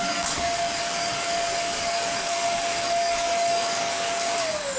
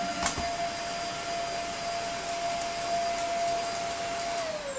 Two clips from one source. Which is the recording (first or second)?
second